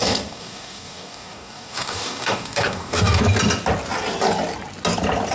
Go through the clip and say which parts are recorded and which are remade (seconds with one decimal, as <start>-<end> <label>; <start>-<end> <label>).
0.0-3.2 remade; 3.2-5.3 recorded